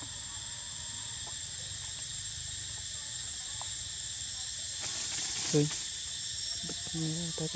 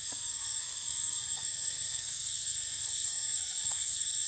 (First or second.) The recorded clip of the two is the first